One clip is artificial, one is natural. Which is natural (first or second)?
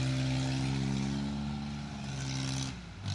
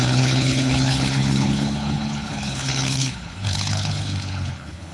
first